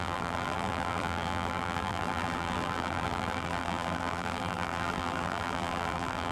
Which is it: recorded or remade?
remade